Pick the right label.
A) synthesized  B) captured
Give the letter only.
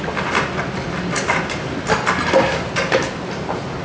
B